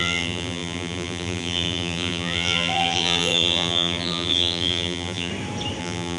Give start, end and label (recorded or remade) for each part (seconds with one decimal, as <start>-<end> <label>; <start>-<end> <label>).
0.0-5.3 remade; 5.3-5.8 recorded; 5.8-6.2 remade